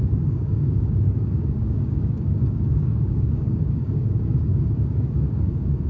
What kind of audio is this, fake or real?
fake